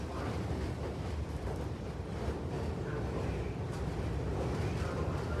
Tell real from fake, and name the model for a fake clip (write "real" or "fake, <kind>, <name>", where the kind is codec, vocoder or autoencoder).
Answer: real